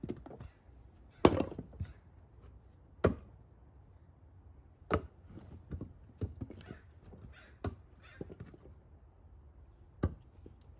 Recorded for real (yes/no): yes